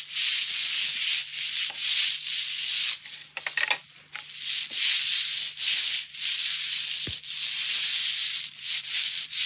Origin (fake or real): real